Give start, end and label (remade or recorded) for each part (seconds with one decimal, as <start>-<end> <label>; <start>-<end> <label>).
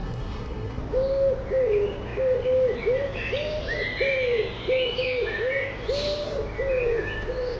0.0-0.8 remade; 0.8-7.6 recorded